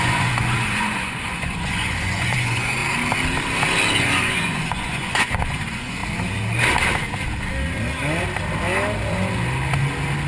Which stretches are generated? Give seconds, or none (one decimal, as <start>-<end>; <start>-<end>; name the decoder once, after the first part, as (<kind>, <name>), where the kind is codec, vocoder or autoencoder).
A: 0.0-2.8 (vocoder, Vocos); 4.0-6.0